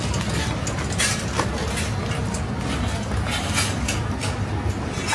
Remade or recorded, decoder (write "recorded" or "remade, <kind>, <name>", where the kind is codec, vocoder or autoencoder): recorded